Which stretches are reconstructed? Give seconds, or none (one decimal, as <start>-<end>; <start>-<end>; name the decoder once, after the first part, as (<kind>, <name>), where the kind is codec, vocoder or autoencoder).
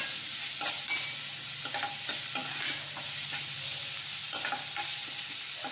none